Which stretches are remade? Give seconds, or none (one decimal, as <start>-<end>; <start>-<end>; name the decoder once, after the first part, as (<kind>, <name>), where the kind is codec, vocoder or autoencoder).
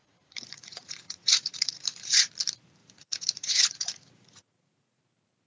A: 0.0-2.3 (vocoder, Vocos); 2.8-5.0